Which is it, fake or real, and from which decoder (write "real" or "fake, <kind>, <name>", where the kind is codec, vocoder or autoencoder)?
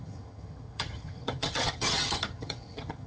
fake, vocoder, HiFi-GAN